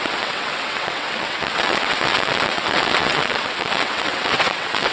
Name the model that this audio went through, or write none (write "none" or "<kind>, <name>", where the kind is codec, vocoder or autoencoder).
vocoder, WaveNeXt